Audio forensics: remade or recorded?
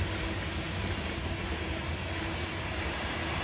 recorded